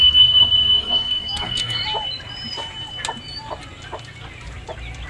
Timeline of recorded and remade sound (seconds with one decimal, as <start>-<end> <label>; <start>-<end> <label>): 0.0-1.8 remade; 1.8-5.1 recorded